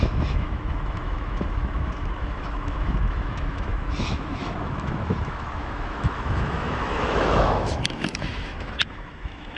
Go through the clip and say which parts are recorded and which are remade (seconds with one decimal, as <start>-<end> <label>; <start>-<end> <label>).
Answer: 0.0-9.6 remade